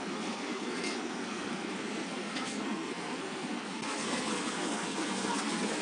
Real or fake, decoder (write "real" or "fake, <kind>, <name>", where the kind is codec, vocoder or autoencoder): fake, codec, SNAC